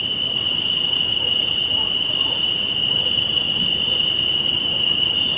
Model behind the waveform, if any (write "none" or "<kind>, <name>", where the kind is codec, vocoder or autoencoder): vocoder, BigVGAN v2